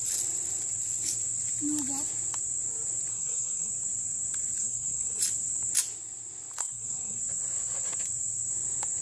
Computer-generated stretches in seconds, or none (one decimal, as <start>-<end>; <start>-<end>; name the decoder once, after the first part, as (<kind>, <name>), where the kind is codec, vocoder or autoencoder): 3.1-3.7 (codec, SNAC); 4.6-5.2; 6.6-7.2